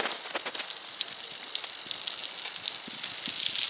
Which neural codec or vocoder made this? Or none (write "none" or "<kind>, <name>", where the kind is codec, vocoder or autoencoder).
none